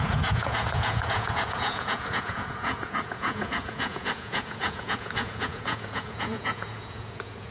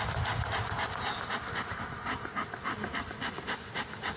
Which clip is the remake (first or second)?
first